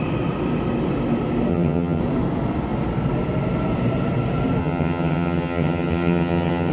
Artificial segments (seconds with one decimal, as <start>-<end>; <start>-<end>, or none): 1.5-2.0; 4.6-6.7